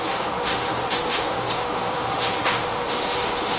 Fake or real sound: fake